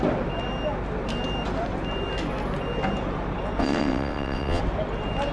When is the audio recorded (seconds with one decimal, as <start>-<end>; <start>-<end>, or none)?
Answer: 0.0-3.6; 4.6-5.3